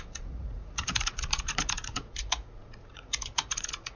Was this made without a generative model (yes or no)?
no